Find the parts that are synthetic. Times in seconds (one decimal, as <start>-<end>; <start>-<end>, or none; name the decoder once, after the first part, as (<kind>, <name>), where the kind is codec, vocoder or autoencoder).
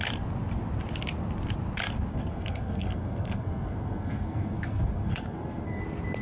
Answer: 2.1-5.8 (codec, SNAC)